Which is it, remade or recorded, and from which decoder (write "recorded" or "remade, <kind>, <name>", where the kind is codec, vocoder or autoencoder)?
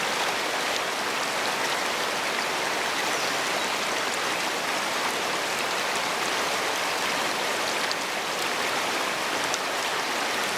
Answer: recorded